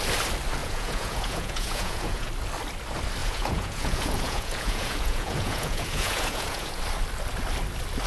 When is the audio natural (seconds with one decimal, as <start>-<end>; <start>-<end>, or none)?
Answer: 0.0-0.6; 2.3-3.2; 6.8-8.1